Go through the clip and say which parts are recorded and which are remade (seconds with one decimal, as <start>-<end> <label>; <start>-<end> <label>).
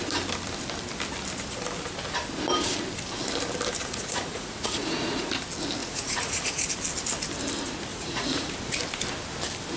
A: 0.0-3.8 recorded; 3.8-5.3 remade; 5.3-5.8 recorded; 5.8-6.7 remade; 6.7-7.9 recorded; 7.9-8.5 remade; 8.5-9.8 recorded